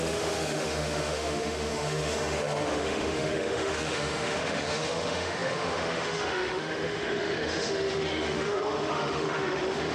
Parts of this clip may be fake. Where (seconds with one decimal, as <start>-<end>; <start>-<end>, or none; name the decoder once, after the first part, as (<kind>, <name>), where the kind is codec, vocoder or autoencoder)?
0.0-9.9 (autoencoder, DAC-VAE)